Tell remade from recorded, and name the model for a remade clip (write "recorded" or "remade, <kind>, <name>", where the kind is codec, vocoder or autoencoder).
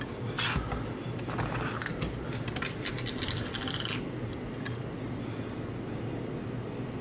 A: recorded